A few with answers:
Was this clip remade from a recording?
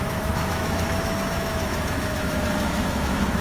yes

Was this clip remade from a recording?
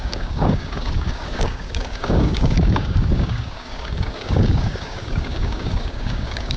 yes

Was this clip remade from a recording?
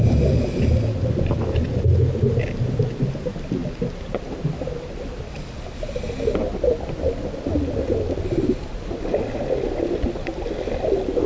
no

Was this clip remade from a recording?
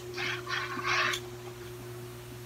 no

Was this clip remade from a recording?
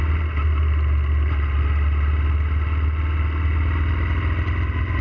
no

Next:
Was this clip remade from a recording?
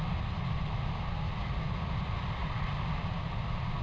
no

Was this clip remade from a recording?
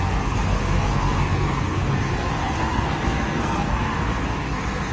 yes